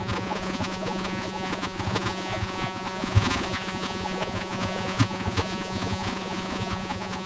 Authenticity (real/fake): fake